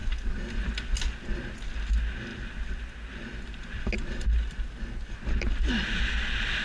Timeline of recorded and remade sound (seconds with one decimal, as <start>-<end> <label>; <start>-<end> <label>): 0.0-6.6 recorded